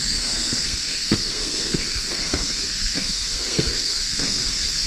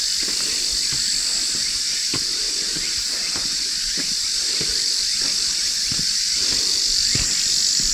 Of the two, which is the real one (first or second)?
second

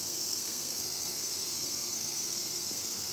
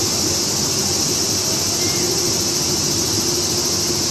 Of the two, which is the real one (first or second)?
second